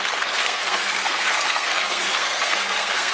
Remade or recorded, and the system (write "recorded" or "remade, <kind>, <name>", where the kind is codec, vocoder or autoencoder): remade, codec, SNAC